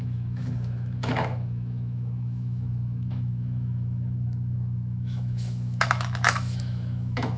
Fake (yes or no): yes